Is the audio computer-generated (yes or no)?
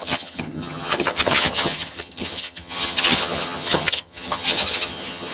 yes